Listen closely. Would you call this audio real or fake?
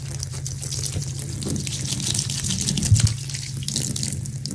real